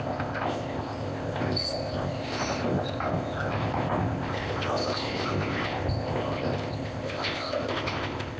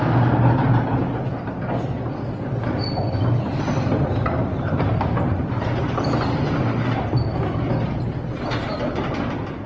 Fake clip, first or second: first